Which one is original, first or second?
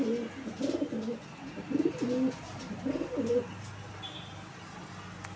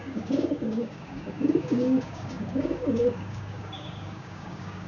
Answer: first